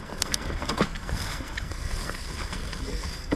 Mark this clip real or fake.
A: fake